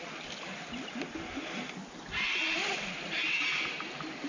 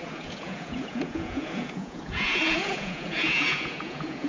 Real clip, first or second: first